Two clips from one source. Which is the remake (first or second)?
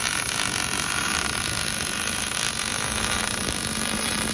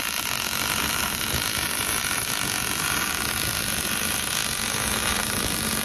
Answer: first